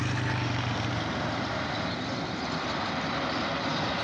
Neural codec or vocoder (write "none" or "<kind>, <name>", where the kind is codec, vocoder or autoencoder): none